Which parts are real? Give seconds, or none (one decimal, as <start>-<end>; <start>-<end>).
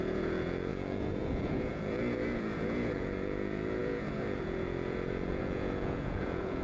none